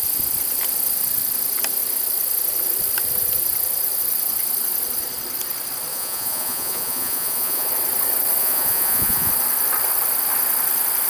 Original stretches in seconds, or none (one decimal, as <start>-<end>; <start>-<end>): 0.0-5.9; 7.7-8.4; 9.3-11.1